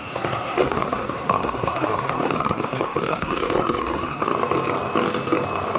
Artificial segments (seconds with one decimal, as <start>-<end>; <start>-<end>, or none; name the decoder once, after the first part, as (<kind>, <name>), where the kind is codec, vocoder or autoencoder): 0.0-4.3 (codec, SNAC)